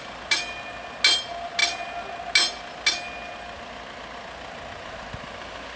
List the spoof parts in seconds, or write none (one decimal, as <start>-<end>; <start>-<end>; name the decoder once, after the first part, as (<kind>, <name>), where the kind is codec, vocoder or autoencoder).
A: none